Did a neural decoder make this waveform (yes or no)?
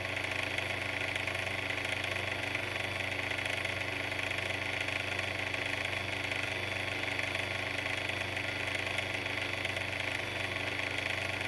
no